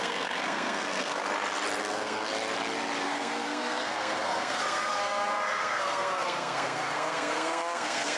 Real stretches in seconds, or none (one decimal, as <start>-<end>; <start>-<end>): 1.2-1.8; 2.3-3.0